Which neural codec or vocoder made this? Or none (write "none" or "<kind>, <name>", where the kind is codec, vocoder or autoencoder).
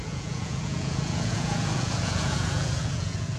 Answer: vocoder, Vocos